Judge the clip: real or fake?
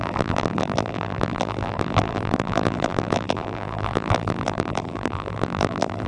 fake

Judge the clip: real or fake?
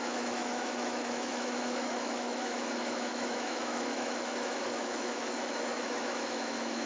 fake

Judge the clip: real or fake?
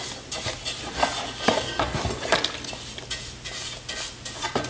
real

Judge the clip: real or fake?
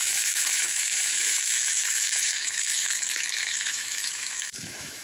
fake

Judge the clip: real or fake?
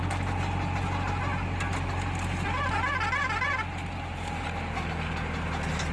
real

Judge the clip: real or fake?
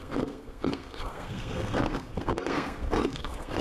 fake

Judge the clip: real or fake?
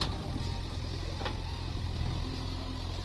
real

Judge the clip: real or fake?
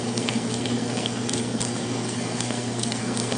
fake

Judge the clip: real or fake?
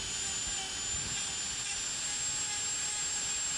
real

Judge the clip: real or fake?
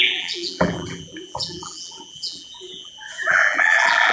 fake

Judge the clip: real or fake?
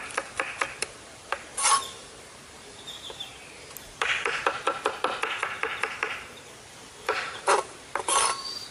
fake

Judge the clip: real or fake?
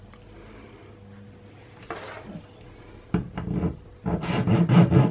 real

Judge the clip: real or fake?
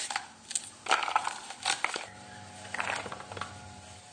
real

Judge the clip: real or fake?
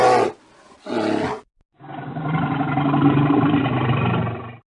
real